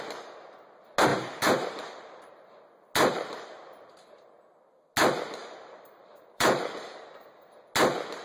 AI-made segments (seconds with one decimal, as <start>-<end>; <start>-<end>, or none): 1.1-2.3; 3.1-3.6; 5.4-7.0